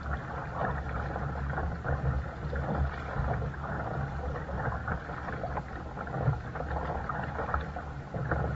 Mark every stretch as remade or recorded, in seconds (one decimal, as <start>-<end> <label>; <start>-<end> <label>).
0.0-8.5 recorded